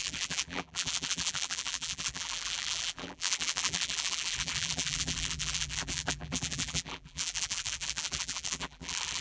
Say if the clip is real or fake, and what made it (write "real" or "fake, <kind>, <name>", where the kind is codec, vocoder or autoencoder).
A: fake, vocoder, BigVGAN v2